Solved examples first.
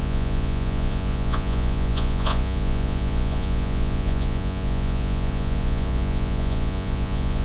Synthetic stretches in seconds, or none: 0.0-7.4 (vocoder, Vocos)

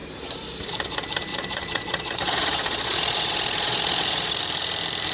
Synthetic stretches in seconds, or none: 1.3-4.4 (vocoder, Vocos)

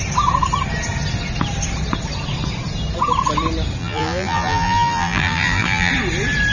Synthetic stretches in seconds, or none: 3.8-5.9 (vocoder, BigVGAN v2)

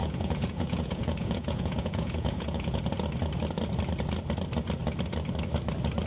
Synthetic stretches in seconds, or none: 0.0-2.8 (vocoder, Vocos)

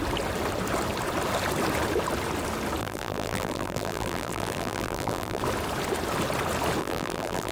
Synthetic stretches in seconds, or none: 2.8-5.4 (vocoder, BigVGAN v2); 6.8-7.5